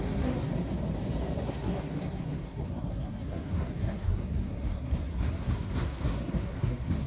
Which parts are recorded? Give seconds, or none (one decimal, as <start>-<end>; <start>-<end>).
0.5-1.4